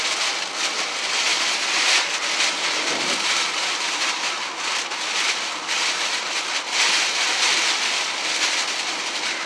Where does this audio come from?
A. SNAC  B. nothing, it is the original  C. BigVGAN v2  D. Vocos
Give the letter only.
B